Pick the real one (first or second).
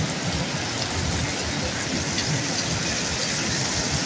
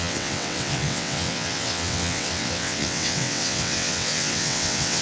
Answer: first